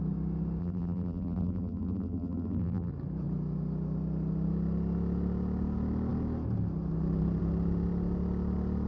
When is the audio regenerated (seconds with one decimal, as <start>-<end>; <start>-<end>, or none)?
0.6-2.9